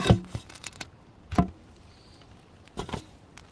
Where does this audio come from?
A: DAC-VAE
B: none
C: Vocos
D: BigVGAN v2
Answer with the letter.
B